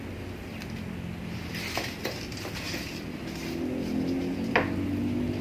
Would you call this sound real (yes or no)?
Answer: yes